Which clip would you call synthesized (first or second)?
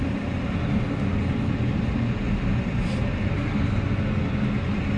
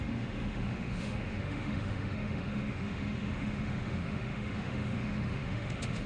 second